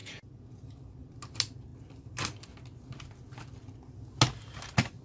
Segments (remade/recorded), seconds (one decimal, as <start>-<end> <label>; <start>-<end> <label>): 0.0-0.6 remade; 0.6-5.0 recorded